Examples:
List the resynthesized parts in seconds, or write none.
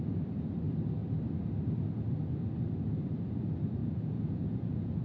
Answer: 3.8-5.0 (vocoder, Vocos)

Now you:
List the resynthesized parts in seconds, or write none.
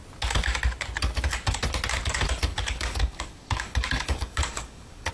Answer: 2.5-5.1 (codec, DAC)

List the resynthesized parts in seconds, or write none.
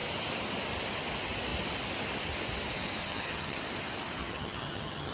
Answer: 3.0-3.6 (vocoder, HiFi-GAN); 4.2-5.1